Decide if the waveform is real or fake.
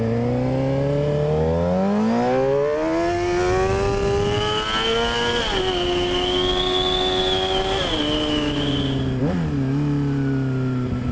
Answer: real